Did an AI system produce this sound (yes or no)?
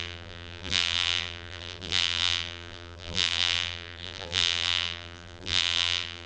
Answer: yes